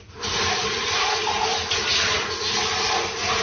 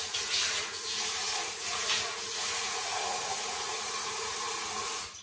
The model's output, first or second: second